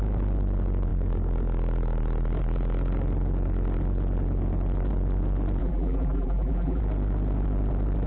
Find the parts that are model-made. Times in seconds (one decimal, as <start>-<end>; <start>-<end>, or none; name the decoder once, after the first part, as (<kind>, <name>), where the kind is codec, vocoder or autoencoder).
5.6-6.8 (vocoder, BigVGAN v2)